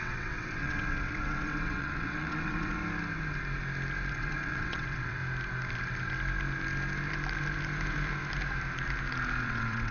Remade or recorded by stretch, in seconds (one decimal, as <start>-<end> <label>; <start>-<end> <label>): 0.0-2.8 remade; 2.8-4.1 recorded; 4.1-5.2 remade; 5.2-9.4 recorded; 9.4-9.9 remade